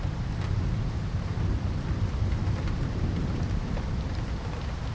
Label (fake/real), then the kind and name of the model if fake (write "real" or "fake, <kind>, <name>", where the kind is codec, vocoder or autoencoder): real